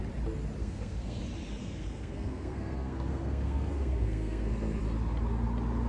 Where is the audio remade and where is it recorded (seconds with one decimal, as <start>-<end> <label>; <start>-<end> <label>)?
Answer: 0.0-0.6 recorded; 0.6-1.2 remade; 1.2-1.6 recorded; 1.6-4.8 remade; 4.8-5.9 recorded